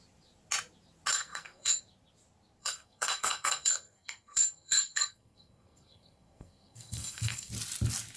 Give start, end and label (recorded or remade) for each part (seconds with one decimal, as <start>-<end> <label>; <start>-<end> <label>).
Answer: 0.0-1.1 recorded; 1.1-1.8 remade; 1.8-2.6 recorded; 2.6-7.5 remade; 7.5-8.2 recorded